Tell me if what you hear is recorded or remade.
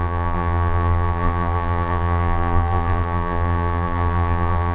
remade